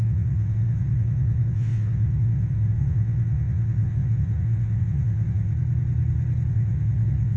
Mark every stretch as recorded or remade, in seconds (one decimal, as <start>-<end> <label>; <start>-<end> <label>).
0.0-5.5 remade; 5.5-6.5 recorded; 6.5-7.4 remade